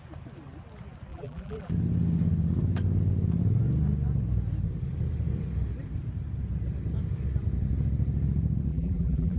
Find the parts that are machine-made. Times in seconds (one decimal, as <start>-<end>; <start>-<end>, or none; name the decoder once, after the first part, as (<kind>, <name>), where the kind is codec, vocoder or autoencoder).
1.1-1.7 (vocoder, BigVGAN v2); 8.7-9.4